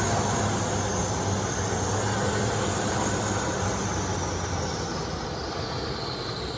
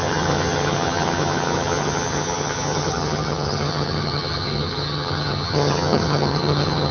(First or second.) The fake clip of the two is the second